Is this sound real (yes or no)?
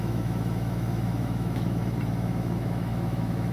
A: no